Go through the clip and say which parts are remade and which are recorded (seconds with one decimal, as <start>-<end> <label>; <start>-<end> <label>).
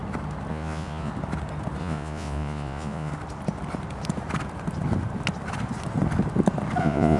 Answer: 0.0-0.5 recorded; 0.5-1.1 remade; 1.1-1.8 recorded; 1.8-3.1 remade; 3.1-6.8 recorded; 6.8-7.2 remade